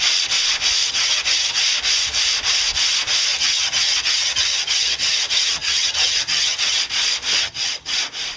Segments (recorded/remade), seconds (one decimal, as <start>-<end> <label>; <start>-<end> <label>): 0.0-0.8 recorded; 0.8-1.6 remade; 1.6-3.3 recorded; 3.3-6.8 remade; 6.8-7.4 recorded; 7.4-8.0 remade; 8.0-8.4 recorded